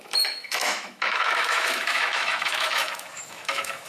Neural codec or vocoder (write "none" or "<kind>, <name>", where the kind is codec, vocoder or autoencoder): autoencoder, DAC-VAE